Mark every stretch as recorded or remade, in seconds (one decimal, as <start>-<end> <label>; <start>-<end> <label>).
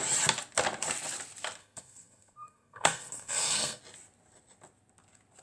0.0-1.6 recorded; 1.6-3.8 remade; 3.8-5.4 recorded